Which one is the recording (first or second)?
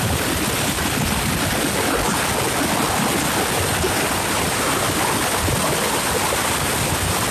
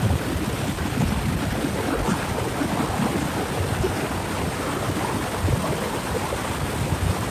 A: first